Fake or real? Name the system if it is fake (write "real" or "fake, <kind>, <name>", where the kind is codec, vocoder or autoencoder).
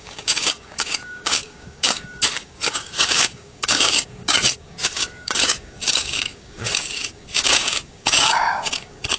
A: fake, codec, DAC